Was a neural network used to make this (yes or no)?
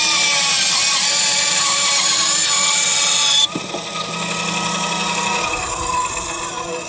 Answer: no